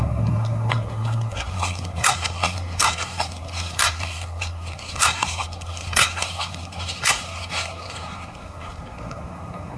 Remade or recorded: remade